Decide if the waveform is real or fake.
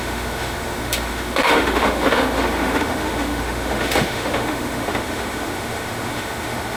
fake